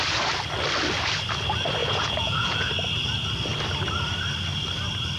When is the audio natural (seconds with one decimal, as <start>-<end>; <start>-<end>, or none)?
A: 0.0-1.8; 2.7-5.2